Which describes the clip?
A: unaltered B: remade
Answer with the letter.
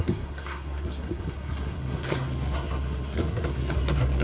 B